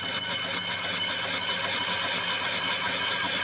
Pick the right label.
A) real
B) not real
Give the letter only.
A